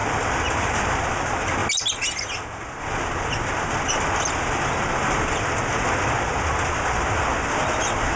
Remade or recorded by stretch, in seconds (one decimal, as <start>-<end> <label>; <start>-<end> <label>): 0.0-8.2 recorded